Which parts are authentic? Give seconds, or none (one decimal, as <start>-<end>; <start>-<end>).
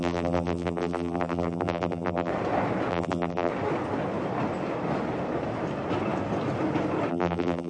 2.3-2.9; 3.5-7.1